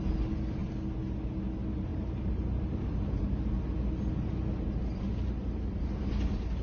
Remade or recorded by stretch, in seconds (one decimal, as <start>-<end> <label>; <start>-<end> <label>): 0.0-1.9 recorded; 1.9-3.0 remade; 3.0-5.1 recorded; 5.1-5.8 remade; 5.8-6.6 recorded

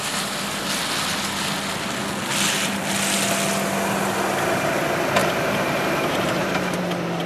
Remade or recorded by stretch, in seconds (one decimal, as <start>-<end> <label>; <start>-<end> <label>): 0.0-5.2 recorded; 5.2-6.8 remade; 6.8-7.3 recorded

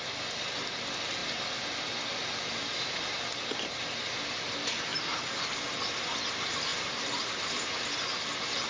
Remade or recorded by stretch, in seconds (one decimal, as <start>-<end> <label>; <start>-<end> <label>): 0.0-1.2 recorded; 1.2-3.6 remade; 3.6-4.9 recorded; 4.9-5.4 remade; 5.4-6.7 recorded; 6.7-7.8 remade; 7.8-8.7 recorded

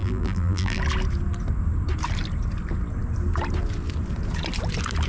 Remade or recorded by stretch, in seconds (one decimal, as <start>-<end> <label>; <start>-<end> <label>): 0.0-0.8 remade; 0.8-5.1 recorded

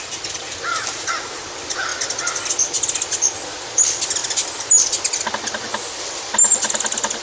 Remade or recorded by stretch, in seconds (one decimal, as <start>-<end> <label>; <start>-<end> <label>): 0.0-7.2 recorded

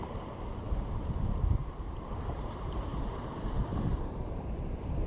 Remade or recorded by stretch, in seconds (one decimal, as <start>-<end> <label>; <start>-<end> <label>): 0.0-0.6 recorded; 0.6-5.1 remade

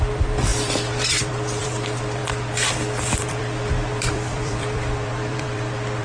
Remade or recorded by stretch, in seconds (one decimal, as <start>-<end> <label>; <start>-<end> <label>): 0.0-2.2 remade; 2.2-3.3 recorded; 3.3-6.0 remade